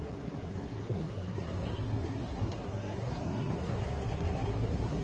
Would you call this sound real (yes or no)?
no